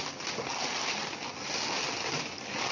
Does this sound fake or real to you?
real